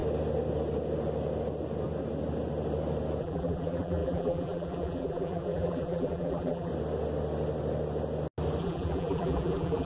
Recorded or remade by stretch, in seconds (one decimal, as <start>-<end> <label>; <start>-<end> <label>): 0.0-3.2 recorded; 3.2-6.7 remade; 6.7-8.6 recorded; 8.6-9.8 remade